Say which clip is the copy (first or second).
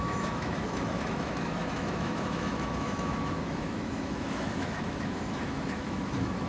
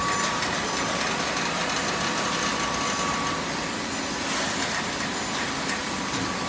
first